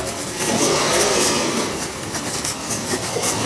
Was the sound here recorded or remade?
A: remade